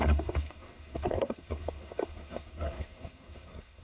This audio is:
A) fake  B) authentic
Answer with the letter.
A